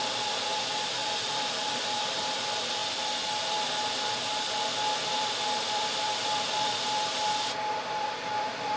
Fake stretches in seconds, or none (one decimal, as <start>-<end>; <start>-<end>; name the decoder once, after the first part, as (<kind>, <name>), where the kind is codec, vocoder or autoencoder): 0.0-2.8 (vocoder, BigVGAN v2); 5.2-8.8